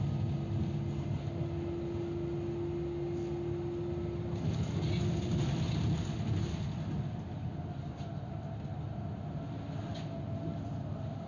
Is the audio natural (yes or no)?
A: yes